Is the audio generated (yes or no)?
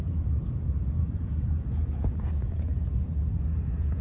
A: yes